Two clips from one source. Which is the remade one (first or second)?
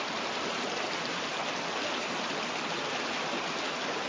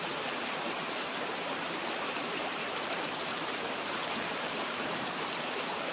second